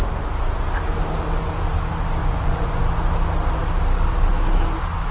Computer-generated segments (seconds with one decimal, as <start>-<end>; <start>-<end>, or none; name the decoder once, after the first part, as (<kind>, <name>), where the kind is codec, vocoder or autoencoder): 2.2-2.8 (vocoder, Vocos)